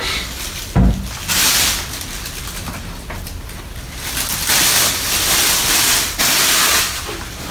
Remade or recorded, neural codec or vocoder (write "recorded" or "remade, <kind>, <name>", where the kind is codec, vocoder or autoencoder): recorded